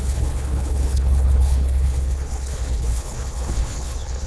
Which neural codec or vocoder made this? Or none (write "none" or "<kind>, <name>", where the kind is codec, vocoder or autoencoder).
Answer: codec, HILCodec